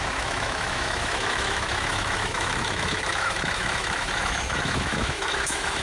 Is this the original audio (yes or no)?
no